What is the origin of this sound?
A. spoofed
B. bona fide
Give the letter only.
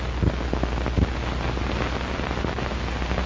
B